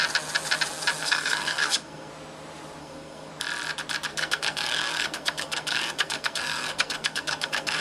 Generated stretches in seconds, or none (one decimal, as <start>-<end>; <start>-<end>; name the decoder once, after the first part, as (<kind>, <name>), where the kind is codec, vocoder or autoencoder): 1.0-2.1 (codec, SNAC); 2.8-3.3; 4.1-7.8